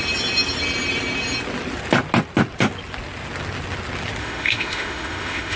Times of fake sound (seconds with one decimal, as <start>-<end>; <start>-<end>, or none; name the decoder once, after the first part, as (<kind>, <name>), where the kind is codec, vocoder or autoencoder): 4.2-5.6 (autoencoder, DAC-VAE)